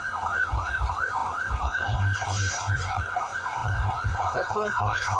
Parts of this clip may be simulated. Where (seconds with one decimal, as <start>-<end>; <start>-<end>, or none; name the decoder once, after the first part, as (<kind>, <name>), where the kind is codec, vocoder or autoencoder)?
0.0-5.2 (codec, SNAC)